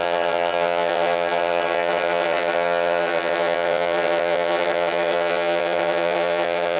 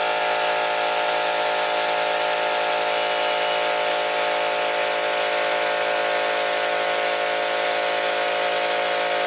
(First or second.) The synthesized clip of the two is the first